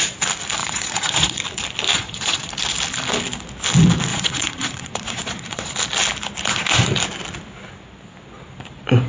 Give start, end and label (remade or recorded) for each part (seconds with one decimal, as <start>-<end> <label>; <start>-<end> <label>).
0.0-0.6 recorded; 0.6-1.4 remade; 1.4-1.9 recorded; 1.9-2.5 remade; 2.5-4.1 recorded; 4.1-5.7 remade; 5.7-9.1 recorded